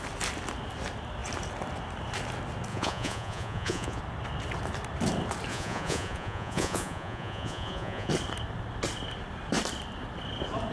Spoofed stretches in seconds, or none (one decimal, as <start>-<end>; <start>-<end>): 2.7-4.0; 5.5-8.1